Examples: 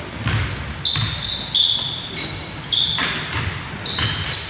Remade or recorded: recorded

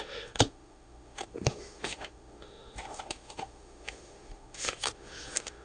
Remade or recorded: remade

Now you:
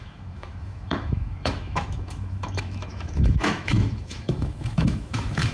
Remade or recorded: remade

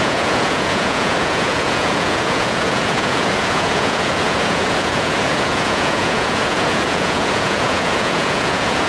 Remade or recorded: remade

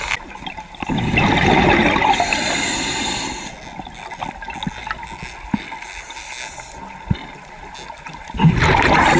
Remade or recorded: recorded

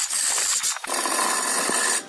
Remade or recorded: recorded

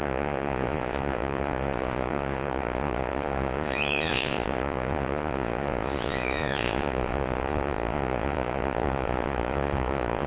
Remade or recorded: remade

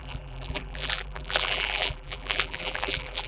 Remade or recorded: remade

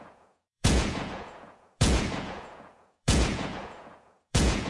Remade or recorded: remade